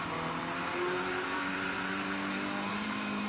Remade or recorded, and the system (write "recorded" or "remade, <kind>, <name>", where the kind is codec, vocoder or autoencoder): remade, vocoder, BigVGAN v2